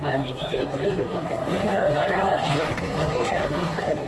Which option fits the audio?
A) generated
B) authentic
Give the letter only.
A